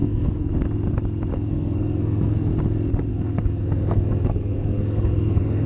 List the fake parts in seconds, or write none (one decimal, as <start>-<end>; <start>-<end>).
0.0-0.5; 1.3-2.5; 3.1-5.7